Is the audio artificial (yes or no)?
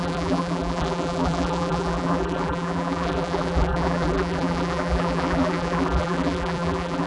yes